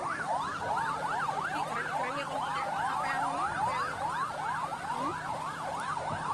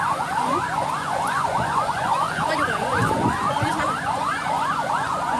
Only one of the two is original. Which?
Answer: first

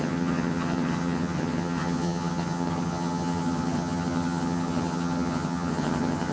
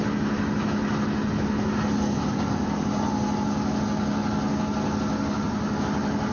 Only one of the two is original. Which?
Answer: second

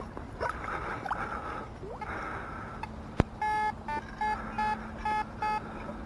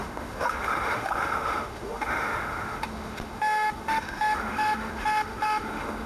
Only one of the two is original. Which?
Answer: first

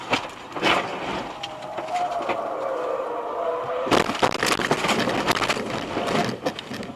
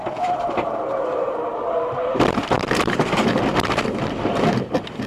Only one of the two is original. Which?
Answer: first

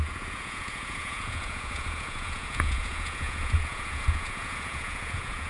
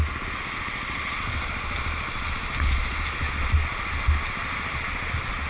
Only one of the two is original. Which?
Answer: second